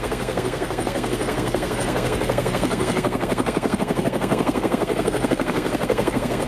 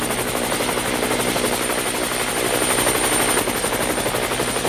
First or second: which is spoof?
first